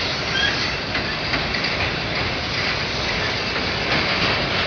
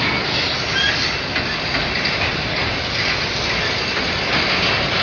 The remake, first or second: first